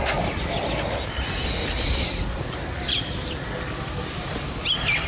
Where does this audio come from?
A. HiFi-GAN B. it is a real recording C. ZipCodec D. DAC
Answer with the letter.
B